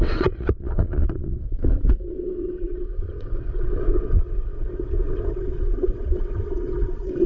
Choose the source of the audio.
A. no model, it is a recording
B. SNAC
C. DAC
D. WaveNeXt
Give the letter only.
D